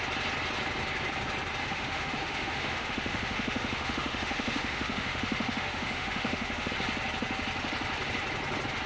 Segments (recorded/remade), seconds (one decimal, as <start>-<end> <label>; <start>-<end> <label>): 0.0-1.6 recorded; 1.6-6.7 remade; 6.7-8.9 recorded